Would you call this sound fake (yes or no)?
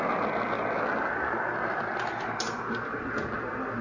no